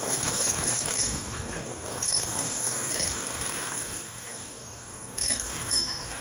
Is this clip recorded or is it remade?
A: remade